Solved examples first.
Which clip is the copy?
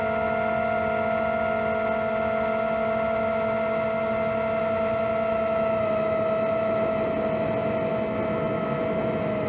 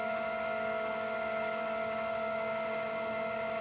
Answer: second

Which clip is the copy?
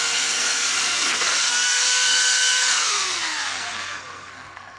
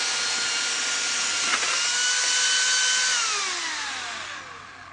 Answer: first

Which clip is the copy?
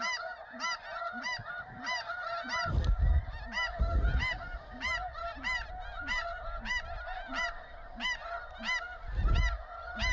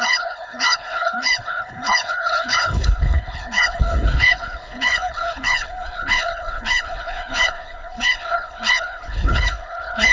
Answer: second